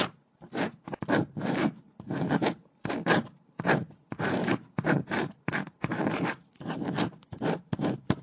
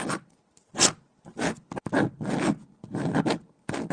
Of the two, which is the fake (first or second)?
first